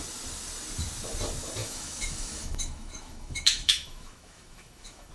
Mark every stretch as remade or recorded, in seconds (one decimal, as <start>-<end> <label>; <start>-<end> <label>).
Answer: 0.0-1.6 recorded; 1.6-5.1 remade